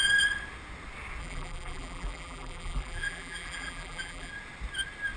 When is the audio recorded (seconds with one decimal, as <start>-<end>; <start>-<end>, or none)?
0.0-1.2; 4.3-5.2